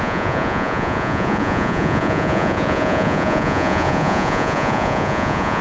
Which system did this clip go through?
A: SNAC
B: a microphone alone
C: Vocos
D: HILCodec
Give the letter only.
C